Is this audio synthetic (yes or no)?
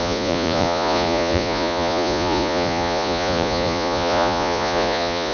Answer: yes